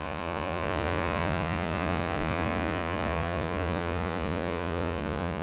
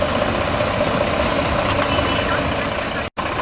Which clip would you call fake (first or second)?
first